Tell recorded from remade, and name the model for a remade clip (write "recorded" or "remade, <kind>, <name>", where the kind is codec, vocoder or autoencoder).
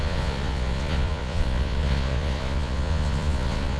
remade, vocoder, Vocos